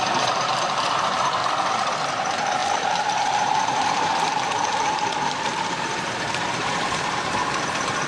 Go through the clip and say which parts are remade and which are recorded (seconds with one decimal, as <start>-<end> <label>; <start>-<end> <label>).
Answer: 0.0-1.4 remade; 1.4-2.1 recorded; 2.1-8.1 remade